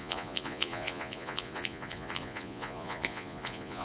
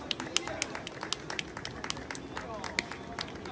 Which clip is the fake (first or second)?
first